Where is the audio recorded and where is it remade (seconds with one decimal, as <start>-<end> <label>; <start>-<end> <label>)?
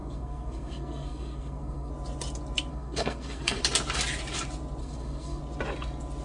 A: 0.0-1.9 remade; 1.9-2.7 recorded; 2.7-3.6 remade; 3.6-4.8 recorded; 4.8-5.4 remade; 5.4-6.2 recorded